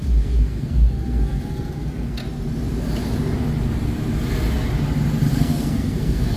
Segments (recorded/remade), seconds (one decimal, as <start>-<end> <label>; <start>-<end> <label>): 0.0-2.2 remade; 2.2-5.3 recorded; 5.3-6.4 remade